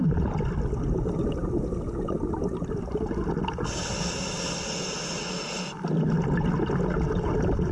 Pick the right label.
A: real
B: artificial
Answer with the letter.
A